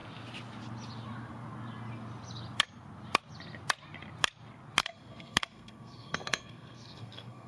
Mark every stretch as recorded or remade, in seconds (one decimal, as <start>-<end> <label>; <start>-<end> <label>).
0.0-4.8 recorded; 4.8-7.5 remade